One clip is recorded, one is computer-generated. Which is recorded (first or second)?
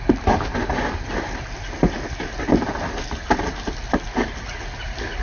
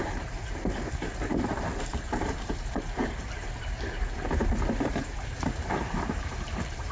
first